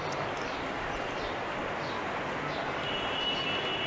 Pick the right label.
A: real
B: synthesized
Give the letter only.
A